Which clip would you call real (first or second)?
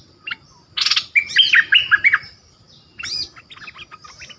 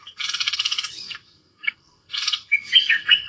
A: first